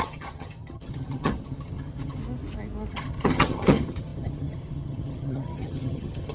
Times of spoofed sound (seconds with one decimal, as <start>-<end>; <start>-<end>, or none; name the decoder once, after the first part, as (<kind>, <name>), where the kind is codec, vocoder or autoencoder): 0.0-2.2 (vocoder, HiFi-GAN); 2.9-6.3